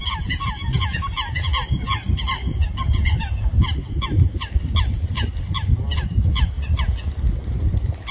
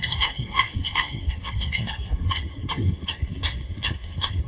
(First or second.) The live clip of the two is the first